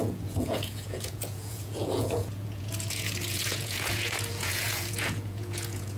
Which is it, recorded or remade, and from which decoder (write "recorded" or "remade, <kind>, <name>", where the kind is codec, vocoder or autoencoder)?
remade, vocoder, Vocos